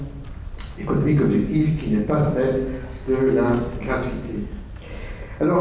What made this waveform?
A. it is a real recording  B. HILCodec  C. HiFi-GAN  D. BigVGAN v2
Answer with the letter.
A